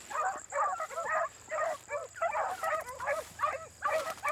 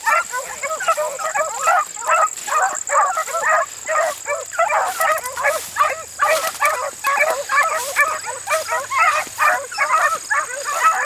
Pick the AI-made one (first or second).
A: first